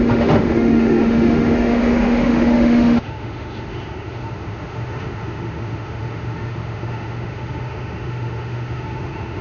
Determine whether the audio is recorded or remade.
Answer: remade